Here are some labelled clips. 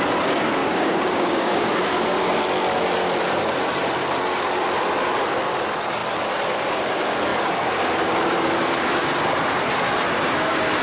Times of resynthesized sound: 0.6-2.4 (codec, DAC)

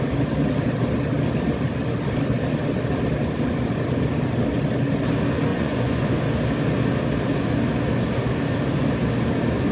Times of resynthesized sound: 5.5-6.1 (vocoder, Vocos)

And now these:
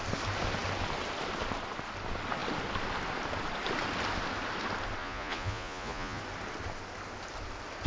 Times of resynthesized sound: 5.0-6.2 (vocoder, Vocos)